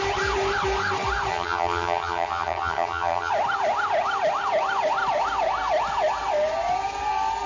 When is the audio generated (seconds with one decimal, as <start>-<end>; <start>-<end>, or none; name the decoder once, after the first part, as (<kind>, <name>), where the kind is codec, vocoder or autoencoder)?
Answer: 1.3-3.3 (vocoder, HiFi-GAN)